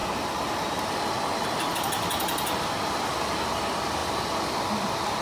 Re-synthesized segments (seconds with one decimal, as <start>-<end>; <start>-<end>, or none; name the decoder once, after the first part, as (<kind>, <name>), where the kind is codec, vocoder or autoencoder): none